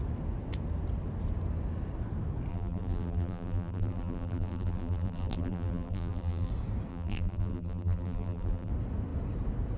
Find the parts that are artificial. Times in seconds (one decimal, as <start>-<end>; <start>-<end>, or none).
2.5-6.5; 6.9-8.7

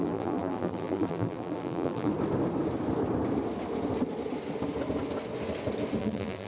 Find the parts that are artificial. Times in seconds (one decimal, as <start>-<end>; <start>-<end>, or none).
0.0-2.1; 6.0-6.5

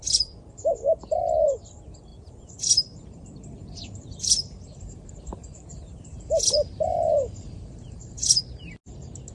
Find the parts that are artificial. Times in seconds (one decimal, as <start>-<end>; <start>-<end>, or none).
2.1-6.2; 6.9-8.4

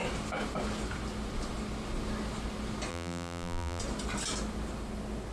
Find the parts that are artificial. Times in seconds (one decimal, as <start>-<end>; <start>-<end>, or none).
2.9-3.8

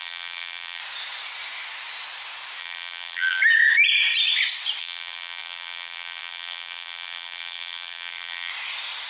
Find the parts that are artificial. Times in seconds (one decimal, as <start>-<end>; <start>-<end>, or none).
0.0-0.8; 2.6-3.4; 4.8-8.5

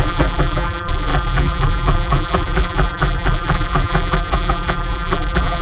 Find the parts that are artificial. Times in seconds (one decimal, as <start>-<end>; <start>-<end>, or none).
0.0-5.6